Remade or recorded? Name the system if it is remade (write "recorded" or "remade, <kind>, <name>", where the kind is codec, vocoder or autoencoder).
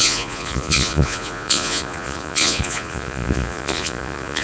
remade, vocoder, Vocos